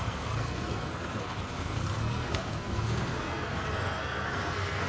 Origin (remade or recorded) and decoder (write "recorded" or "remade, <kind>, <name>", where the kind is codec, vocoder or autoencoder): remade, codec, SNAC